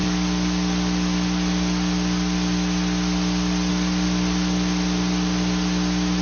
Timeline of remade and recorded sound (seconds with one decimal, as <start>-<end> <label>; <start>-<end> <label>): 0.0-6.2 recorded